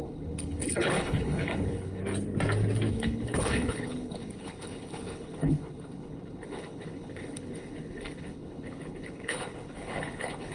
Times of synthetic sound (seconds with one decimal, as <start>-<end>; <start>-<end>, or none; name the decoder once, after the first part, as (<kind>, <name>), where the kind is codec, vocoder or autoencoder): 0.0-2.0 (codec, HILCodec); 2.9-10.5